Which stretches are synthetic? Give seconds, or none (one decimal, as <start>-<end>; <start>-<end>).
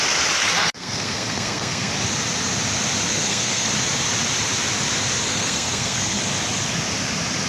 0.6-1.9; 3.1-3.7; 5.3-6.2